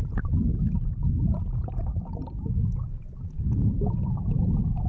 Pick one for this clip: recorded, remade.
recorded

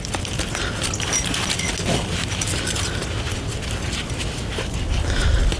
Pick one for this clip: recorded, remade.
recorded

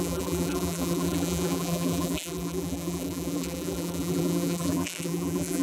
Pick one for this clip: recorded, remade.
remade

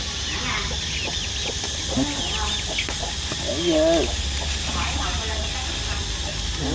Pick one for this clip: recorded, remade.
recorded